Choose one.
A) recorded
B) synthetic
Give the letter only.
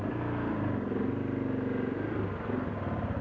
A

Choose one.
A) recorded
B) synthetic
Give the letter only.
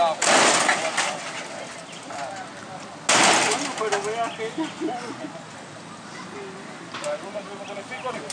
A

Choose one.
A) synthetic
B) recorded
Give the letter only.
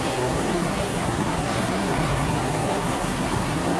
A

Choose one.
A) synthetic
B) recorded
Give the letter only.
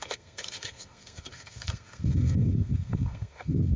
A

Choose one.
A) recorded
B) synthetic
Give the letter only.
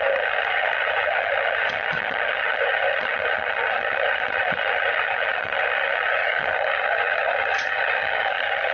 B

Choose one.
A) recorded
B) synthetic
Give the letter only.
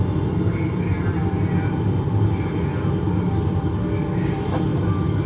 A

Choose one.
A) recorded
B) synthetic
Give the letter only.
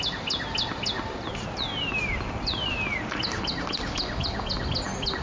A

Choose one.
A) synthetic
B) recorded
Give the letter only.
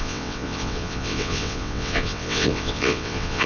A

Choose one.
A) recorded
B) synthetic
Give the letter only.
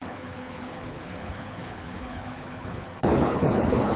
B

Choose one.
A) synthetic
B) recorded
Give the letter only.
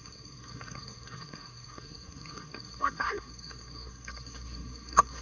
A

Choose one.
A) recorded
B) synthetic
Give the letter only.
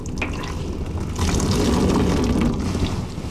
A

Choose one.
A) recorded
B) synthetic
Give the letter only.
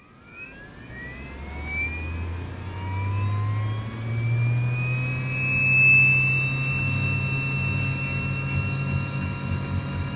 A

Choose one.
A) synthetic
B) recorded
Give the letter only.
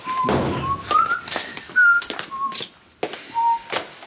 B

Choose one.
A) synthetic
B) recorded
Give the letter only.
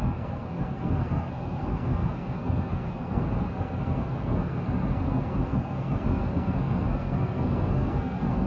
A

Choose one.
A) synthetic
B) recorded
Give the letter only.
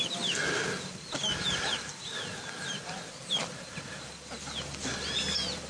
B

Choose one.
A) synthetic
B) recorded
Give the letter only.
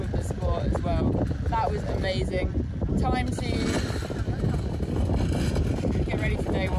B